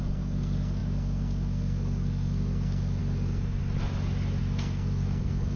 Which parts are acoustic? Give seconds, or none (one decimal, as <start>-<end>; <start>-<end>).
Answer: 3.6-4.4